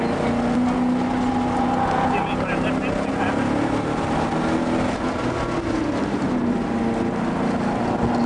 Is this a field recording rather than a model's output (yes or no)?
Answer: yes